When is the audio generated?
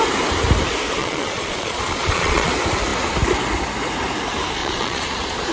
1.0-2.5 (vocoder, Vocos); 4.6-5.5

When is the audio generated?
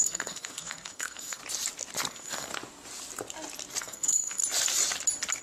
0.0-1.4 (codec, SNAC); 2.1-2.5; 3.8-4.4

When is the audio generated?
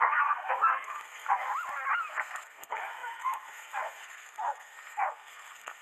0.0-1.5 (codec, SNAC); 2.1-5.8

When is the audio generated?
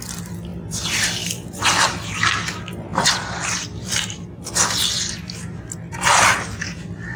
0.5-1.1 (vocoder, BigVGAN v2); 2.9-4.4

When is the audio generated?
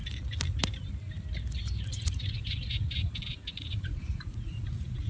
0.0-0.6 (vocoder, Vocos); 1.9-5.1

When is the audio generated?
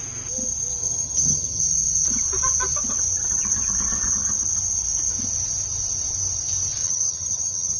0.8-1.6 (vocoder, HiFi-GAN); 6.8-7.8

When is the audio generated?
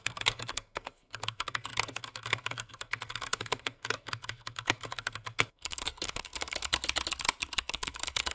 0.0-6.7 (codec, SNAC); 7.6-8.3